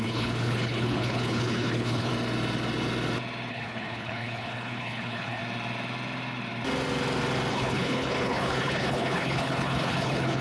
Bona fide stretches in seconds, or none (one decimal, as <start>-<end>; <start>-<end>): 2.1-3.5; 5.4-7.5